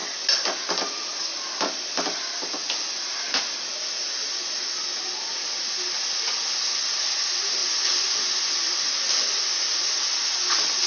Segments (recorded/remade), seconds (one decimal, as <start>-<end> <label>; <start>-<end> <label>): 0.0-10.9 recorded

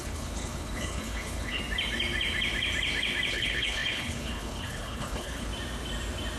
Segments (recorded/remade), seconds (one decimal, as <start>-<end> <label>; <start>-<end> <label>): 0.0-1.6 remade; 1.6-3.3 recorded; 3.3-5.5 remade; 5.5-6.4 recorded

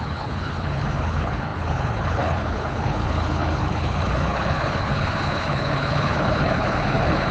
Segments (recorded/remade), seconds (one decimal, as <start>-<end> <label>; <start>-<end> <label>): 0.0-7.3 remade

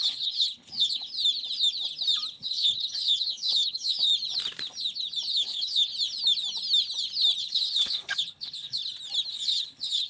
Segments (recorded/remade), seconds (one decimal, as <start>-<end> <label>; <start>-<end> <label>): 0.0-1.1 remade; 1.1-2.3 recorded; 2.3-4.1 remade; 4.1-5.3 recorded; 5.3-5.9 remade; 5.9-7.4 recorded; 7.4-8.8 remade; 8.8-9.3 recorded; 9.3-10.1 remade

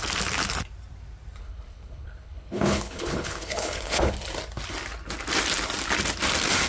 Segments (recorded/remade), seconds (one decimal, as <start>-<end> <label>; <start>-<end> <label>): 0.0-1.4 recorded; 1.4-4.1 remade; 4.1-6.7 recorded

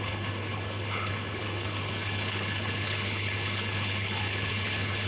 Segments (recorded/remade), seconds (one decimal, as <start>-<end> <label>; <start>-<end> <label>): 0.0-5.1 remade

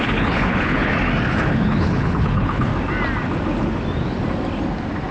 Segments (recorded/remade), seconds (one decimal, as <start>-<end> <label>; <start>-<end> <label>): 0.0-0.9 remade; 0.9-1.5 recorded; 1.5-2.7 remade; 2.7-5.1 recorded

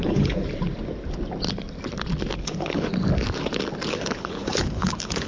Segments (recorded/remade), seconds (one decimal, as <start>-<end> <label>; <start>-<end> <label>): 0.0-0.4 remade; 0.4-2.4 recorded; 2.4-2.9 remade; 2.9-3.9 recorded; 3.9-5.3 remade